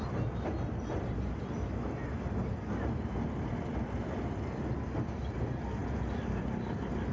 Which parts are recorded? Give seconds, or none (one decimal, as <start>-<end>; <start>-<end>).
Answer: 0.0-7.1